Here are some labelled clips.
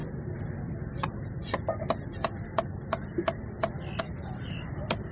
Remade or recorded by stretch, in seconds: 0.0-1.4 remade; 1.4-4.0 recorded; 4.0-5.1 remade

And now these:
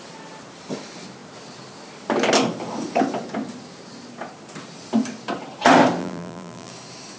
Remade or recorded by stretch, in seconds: 0.0-6.0 recorded; 6.0-6.7 remade; 6.7-7.2 recorded

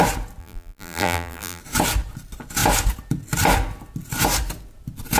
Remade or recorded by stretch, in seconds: 0.0-0.4 recorded; 0.4-1.6 remade; 1.6-5.2 recorded

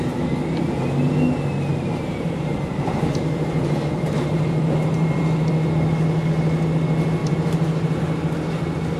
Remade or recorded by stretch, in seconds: 0.0-1.7 recorded; 1.7-5.5 remade; 5.5-7.2 recorded; 7.2-8.0 remade; 8.0-9.0 recorded

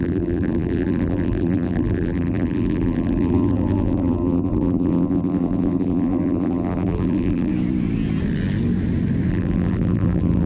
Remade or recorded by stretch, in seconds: 0.0-7.5 remade; 7.5-9.3 recorded; 9.3-10.5 remade